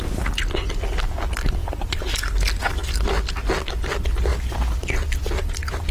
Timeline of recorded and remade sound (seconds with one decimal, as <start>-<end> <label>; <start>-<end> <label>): 0.0-1.6 recorded; 1.6-2.1 remade; 2.1-4.3 recorded; 4.3-4.8 remade; 4.8-5.9 recorded